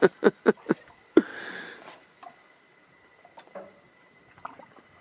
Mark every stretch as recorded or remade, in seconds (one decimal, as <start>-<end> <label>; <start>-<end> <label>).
0.0-5.0 recorded